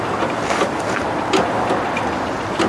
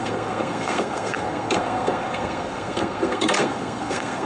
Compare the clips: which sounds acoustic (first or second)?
first